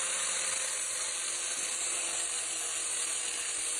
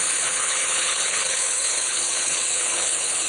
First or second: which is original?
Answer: first